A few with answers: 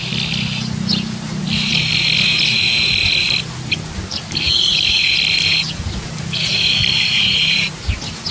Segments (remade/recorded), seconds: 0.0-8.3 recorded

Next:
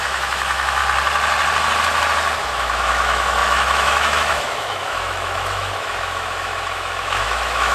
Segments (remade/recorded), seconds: 0.0-0.8 remade; 0.8-2.4 recorded; 2.4-7.7 remade

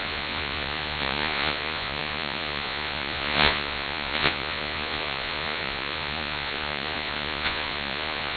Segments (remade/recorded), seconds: 0.0-8.4 remade

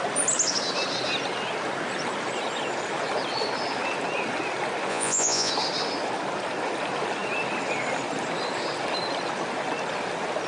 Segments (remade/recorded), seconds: 0.0-4.9 recorded; 4.9-5.5 remade; 5.5-10.5 recorded

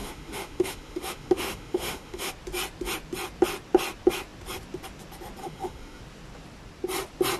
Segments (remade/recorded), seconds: 0.0-2.3 remade; 2.3-5.4 recorded; 5.4-6.0 remade; 6.0-7.4 recorded

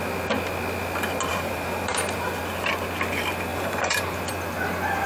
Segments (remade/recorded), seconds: 0.0-1.3 recorded; 1.3-2.4 remade; 2.4-3.5 recorded; 3.5-4.3 remade; 4.3-5.1 recorded

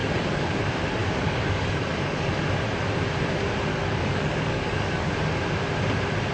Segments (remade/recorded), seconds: 0.0-0.6 remade; 0.6-1.0 recorded; 1.0-2.3 remade; 2.3-3.7 recorded; 3.7-5.1 remade; 5.1-6.3 recorded

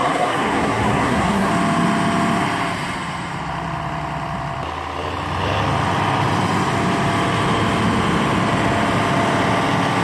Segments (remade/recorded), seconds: 0.0-1.5 remade; 1.5-10.0 recorded